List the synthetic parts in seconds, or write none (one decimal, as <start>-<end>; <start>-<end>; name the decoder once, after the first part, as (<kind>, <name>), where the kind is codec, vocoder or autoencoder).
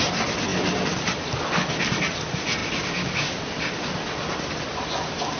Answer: none